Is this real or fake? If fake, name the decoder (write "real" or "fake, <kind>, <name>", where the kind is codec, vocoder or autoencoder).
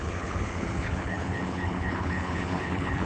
fake, codec, HILCodec